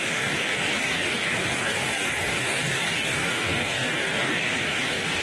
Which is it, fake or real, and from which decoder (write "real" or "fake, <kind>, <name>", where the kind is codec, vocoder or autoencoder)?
fake, codec, DAC